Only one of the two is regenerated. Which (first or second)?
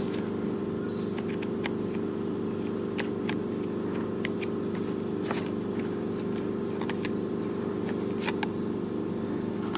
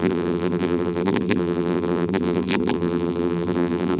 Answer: second